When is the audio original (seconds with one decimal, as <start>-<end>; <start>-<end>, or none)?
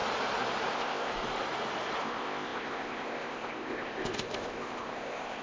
0.0-0.7; 1.1-2.0